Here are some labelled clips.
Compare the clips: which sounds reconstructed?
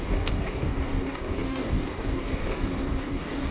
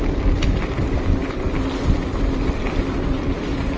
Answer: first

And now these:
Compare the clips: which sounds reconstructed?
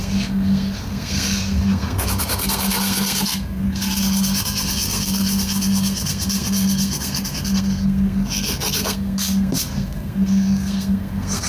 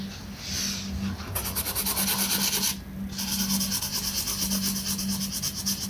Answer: first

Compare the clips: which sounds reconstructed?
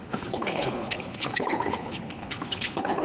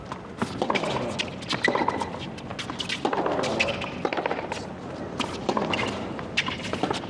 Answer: first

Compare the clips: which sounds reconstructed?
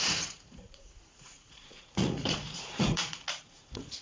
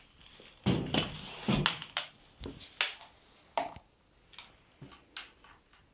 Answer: first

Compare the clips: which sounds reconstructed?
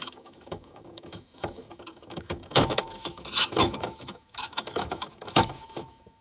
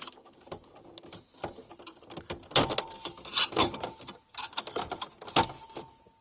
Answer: first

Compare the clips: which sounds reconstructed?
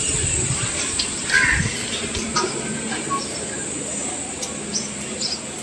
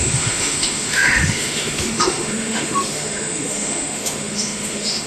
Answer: second